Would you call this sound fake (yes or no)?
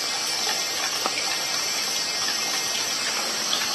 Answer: no